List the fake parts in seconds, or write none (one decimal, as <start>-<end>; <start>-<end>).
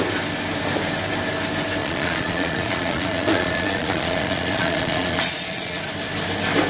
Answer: 1.8-5.8